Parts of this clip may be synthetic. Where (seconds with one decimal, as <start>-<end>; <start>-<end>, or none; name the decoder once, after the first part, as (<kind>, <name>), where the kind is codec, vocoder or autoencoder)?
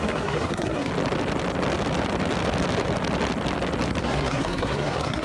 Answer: 0.0-0.9 (codec, SNAC); 4.0-5.2